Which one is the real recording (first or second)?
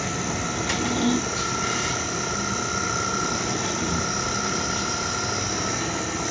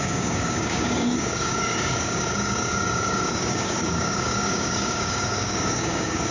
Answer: first